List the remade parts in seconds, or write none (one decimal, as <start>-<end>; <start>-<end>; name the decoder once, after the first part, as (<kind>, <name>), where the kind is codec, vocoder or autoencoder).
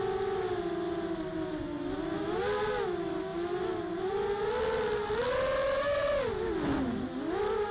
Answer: none